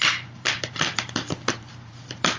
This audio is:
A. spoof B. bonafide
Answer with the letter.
A